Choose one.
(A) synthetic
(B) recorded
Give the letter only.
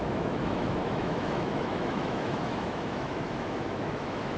A